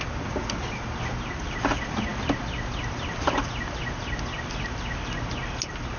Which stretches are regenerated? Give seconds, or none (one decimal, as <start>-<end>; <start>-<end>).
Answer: none